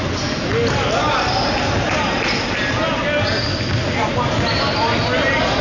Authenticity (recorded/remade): recorded